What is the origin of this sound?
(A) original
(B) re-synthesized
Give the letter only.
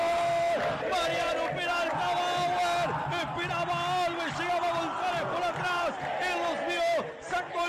A